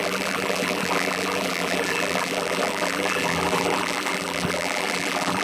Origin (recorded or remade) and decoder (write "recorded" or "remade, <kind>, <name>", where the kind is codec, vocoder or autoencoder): remade, vocoder, BigVGAN v2